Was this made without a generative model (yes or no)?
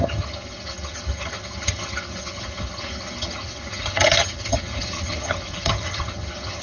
no